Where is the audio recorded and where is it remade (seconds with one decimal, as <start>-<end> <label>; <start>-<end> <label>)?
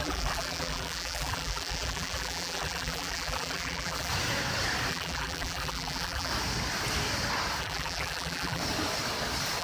0.0-4.1 remade; 4.1-4.9 recorded; 4.9-6.3 remade; 6.3-7.6 recorded; 7.6-8.6 remade; 8.6-9.6 recorded